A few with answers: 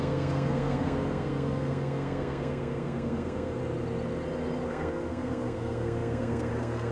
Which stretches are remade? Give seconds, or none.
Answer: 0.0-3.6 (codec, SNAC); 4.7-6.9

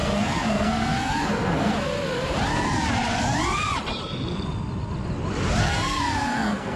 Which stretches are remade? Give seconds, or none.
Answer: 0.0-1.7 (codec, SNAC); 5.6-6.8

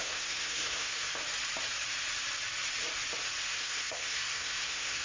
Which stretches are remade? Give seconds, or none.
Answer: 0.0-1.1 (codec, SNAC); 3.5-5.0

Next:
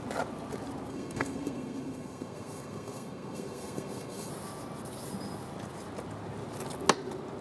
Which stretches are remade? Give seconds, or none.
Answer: 0.9-4.3 (codec, SNAC)

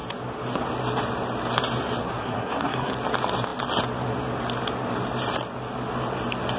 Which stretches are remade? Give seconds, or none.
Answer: 2.0-2.9 (codec, SNAC)

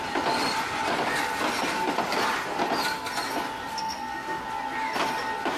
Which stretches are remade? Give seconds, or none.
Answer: 3.7-4.4 (codec, SNAC)

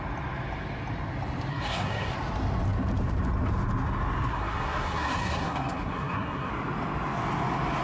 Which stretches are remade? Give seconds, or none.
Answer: 1.5-2.1 (codec, SNAC); 4.3-6.5

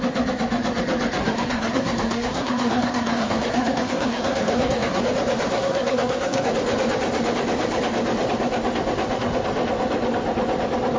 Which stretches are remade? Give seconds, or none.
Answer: 1.2-5.0 (codec, SNAC); 5.5-6.5